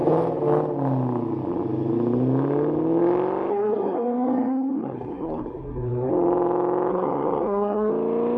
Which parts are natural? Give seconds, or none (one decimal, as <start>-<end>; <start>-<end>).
0.0-3.5; 6.1-6.9; 7.9-8.4